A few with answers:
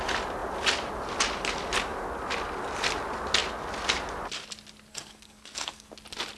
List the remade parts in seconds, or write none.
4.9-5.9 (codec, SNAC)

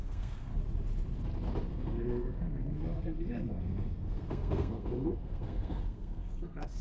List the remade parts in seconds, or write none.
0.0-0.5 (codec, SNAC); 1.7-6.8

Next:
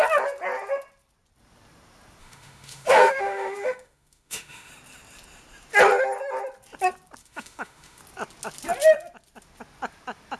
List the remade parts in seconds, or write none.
2.2-4.7 (autoencoder, DAC-VAE); 7.2-8.0

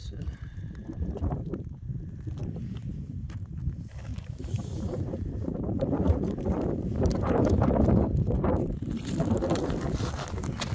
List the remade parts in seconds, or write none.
0.0-2.2 (vocoder, BigVGAN v2); 4.1-9.1